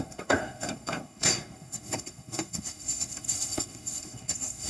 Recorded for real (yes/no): no